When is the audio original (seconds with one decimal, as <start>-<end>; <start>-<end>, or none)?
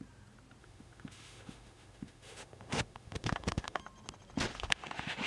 0.0-0.6; 3.8-4.5